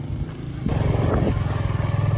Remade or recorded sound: recorded